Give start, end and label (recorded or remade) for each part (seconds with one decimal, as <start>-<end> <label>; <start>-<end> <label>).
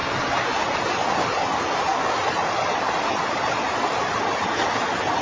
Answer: 0.0-5.2 recorded